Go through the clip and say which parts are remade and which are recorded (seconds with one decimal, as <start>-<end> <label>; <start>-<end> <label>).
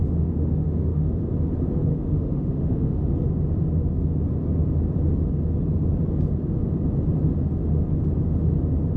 0.0-1.2 remade; 1.2-1.9 recorded; 1.9-3.1 remade; 3.1-9.0 recorded